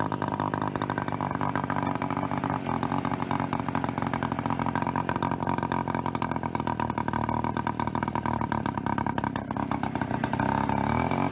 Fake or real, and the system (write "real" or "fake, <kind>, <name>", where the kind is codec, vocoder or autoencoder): real